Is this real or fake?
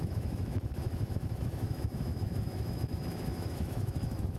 fake